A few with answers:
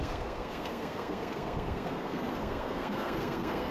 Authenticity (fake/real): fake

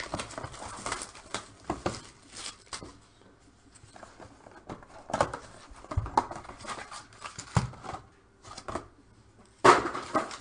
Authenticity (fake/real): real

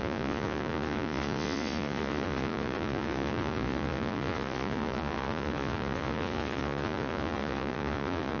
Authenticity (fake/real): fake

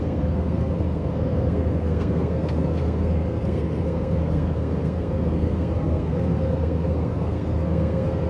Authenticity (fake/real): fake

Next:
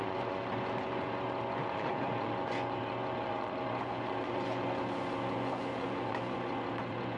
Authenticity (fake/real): fake